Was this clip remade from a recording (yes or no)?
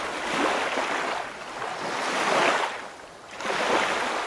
no